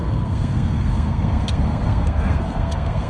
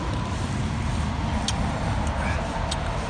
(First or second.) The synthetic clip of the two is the first